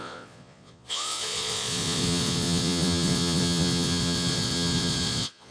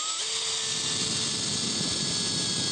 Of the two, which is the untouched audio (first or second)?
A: second